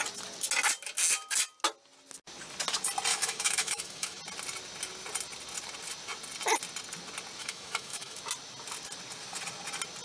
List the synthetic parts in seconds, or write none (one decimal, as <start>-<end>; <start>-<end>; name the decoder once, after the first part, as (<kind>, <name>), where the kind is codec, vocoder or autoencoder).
3.1-4.2 (autoencoder, DAC-VAE); 7.4-8.2